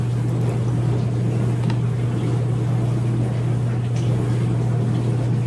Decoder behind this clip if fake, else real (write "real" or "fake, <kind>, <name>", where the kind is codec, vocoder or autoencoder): real